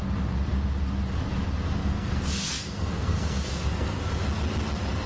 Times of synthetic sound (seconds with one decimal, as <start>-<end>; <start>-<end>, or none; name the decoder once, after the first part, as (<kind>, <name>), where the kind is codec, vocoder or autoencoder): 1.8-4.0 (codec, SNAC)